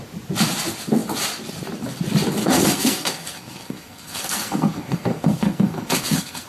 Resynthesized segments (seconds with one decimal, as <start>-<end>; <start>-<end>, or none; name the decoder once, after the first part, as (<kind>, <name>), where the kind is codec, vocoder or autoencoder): 2.4-6.5 (codec, SNAC)